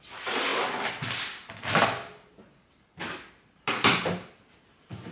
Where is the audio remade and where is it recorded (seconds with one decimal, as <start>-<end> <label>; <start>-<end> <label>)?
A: 0.0-5.1 recorded